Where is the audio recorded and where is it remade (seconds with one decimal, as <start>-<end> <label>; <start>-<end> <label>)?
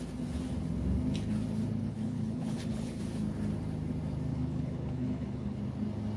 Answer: 0.0-1.8 recorded; 1.8-3.0 remade; 3.0-4.3 recorded; 4.3-5.6 remade; 5.6-6.2 recorded